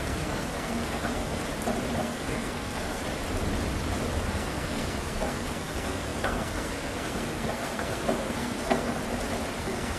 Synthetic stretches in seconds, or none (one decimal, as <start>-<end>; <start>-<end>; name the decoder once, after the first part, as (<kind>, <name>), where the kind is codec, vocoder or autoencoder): 0.0-1.4 (codec, SNAC); 2.0-3.0; 4.3-9.0; 9.6-10.0